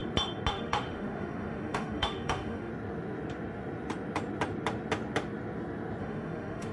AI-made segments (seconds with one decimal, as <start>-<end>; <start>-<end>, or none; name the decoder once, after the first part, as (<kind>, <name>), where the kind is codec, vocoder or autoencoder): 0.5-2.7 (autoencoder, DAC-VAE); 6.0-6.7